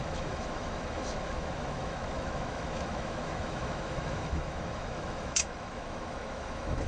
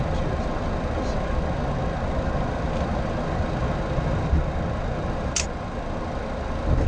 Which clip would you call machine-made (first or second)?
first